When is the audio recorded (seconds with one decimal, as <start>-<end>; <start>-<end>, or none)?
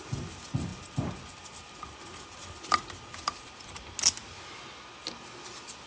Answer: 0.0-5.9